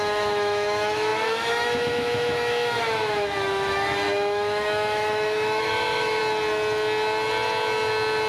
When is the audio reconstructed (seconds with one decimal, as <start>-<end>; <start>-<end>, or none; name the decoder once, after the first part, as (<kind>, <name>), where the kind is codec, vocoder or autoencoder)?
0.0-6.2 (autoencoder, DAC-VAE)